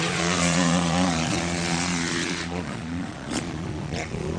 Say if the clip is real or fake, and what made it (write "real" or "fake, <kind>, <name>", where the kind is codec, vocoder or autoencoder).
fake, vocoder, Vocos